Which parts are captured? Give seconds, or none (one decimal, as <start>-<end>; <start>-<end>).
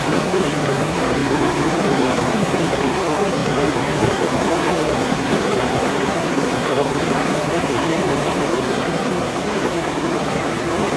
none